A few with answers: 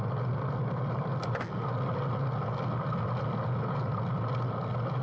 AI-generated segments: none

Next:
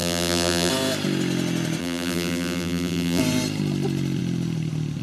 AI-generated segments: 0.0-0.7 (vocoder, BigVGAN v2); 1.8-3.2